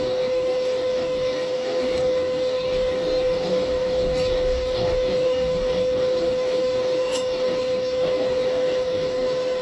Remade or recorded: remade